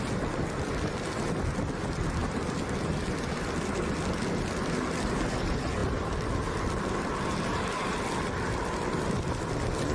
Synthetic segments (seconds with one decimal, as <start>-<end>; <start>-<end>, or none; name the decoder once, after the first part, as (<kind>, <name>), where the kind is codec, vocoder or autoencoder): none